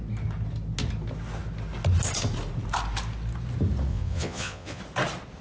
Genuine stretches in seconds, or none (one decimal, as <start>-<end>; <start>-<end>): 0.0-3.9; 4.8-5.4